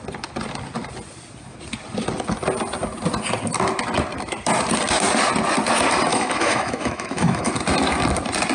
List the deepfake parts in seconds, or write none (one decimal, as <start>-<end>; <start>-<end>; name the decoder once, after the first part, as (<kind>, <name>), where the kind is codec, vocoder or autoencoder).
6.1-7.5 (autoencoder, DAC-VAE)